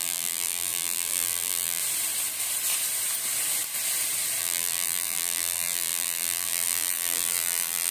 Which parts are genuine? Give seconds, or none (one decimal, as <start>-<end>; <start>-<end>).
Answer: 1.8-4.4